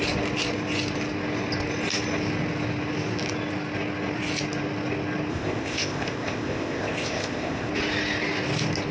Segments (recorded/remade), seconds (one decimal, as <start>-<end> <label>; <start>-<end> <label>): 0.0-5.3 recorded; 5.3-7.7 remade; 7.7-8.9 recorded